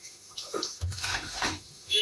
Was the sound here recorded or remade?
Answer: remade